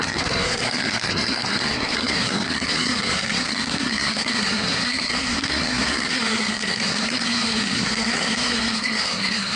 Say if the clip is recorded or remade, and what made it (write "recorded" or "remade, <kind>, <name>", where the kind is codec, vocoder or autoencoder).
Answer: remade, codec, SNAC